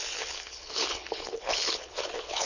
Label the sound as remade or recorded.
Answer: remade